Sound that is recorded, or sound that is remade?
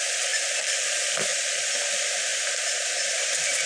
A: recorded